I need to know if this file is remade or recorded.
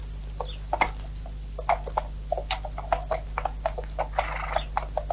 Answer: recorded